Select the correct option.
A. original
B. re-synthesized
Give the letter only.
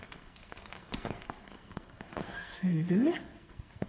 B